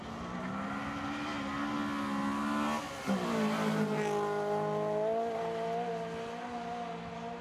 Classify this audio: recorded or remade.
recorded